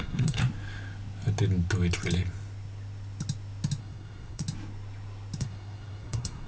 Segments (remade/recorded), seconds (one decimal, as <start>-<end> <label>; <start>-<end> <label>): 0.0-0.4 remade; 0.4-3.8 recorded; 3.8-4.4 remade; 4.4-5.4 recorded; 5.4-6.5 remade